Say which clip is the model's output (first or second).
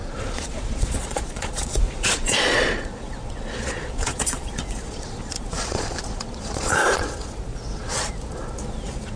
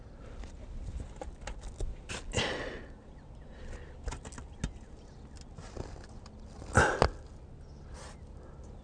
first